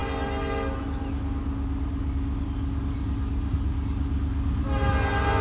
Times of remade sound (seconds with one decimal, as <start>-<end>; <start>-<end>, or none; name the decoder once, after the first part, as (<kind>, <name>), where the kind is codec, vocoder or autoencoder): none